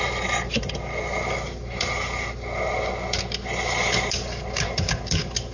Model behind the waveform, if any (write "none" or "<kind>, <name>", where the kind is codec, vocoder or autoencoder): none